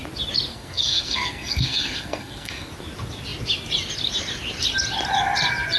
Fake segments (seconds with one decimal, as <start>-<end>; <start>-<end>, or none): 0.5-2.7